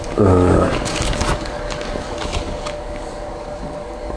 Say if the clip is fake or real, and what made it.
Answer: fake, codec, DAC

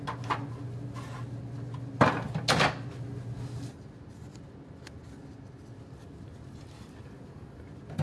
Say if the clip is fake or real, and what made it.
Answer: real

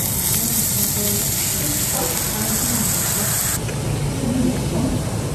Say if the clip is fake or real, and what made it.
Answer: real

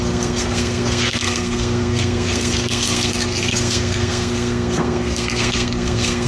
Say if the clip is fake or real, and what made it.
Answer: fake, codec, SNAC